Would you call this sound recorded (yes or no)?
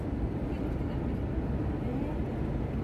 yes